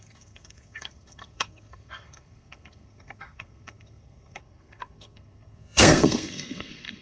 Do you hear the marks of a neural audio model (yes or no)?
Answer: yes